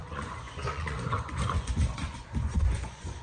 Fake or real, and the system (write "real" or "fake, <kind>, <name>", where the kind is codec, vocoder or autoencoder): fake, vocoder, Vocos